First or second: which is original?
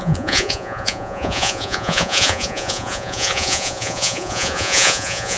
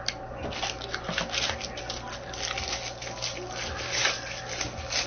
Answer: second